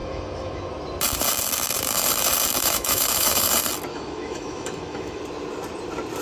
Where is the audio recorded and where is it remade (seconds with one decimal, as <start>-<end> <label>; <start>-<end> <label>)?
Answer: 0.0-0.7 remade; 0.7-2.6 recorded; 2.6-3.5 remade; 3.5-3.9 recorded; 3.9-5.2 remade; 5.2-6.2 recorded